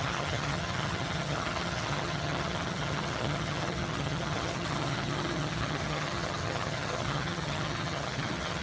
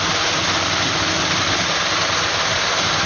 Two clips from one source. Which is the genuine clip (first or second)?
second